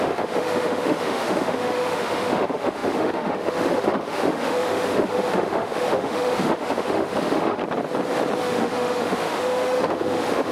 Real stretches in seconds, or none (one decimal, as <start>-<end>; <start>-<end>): 7.6-8.4